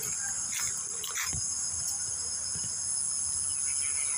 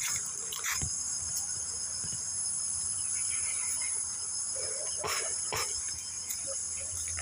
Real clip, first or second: first